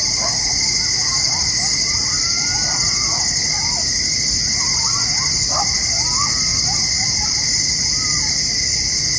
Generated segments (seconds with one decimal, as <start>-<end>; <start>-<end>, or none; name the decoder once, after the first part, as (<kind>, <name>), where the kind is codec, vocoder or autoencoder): none